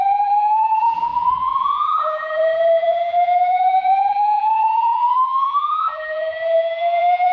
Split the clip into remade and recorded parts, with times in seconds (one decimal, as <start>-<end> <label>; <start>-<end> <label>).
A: 0.0-7.3 remade